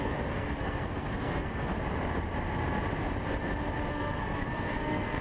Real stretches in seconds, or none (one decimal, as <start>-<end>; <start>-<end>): 1.7-3.9